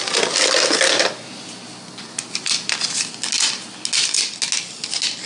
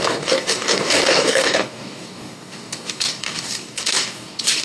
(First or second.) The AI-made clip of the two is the second